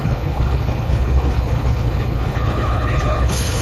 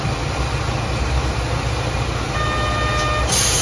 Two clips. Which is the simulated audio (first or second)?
first